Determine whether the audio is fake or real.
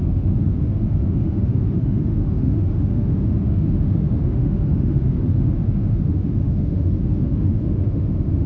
fake